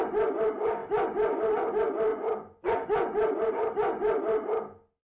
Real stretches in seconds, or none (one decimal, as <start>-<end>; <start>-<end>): 0.0-2.1; 3.5-5.0

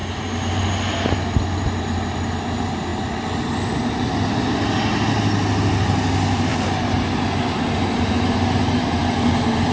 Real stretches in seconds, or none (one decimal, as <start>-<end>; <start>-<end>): 0.0-9.7